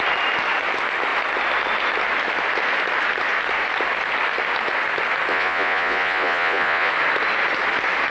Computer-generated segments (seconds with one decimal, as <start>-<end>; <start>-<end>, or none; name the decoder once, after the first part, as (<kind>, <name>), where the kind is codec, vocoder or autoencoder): 5.3-6.9 (vocoder, Vocos)